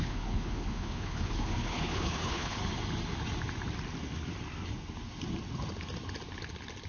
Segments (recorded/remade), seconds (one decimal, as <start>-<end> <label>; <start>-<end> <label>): 0.0-2.6 remade; 2.6-6.9 recorded